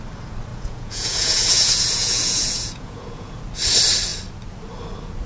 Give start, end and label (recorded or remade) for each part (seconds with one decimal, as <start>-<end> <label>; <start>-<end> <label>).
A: 0.0-0.5 recorded; 0.5-3.4 remade; 3.4-5.3 recorded